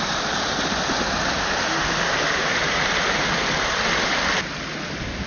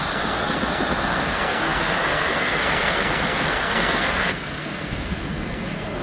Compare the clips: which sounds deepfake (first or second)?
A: second